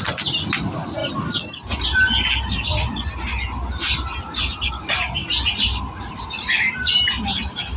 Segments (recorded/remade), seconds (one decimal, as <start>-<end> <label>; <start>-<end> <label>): 0.0-7.8 recorded